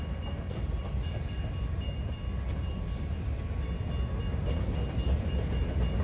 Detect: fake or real fake